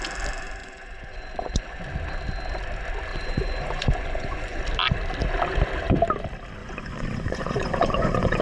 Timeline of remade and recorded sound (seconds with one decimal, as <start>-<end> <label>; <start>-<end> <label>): 0.0-0.6 recorded; 0.6-1.8 remade; 1.8-3.1 recorded; 3.1-4.6 remade; 4.6-6.6 recorded; 6.6-8.4 remade